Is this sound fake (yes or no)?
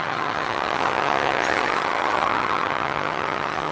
yes